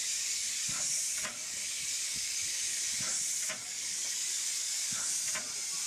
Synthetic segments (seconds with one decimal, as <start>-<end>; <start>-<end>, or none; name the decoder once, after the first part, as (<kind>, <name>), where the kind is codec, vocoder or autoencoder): 0.0-2.8 (codec, DAC); 3.6-5.1